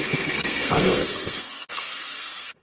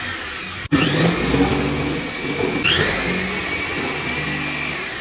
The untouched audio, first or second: second